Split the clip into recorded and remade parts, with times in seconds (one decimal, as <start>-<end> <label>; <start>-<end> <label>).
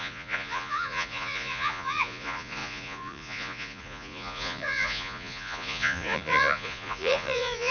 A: 0.0-7.7 remade